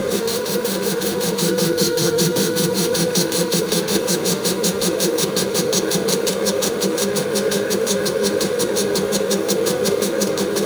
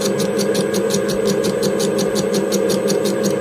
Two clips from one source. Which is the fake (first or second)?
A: first